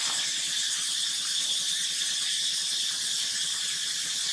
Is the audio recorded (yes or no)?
yes